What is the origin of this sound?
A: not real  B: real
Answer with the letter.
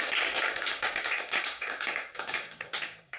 A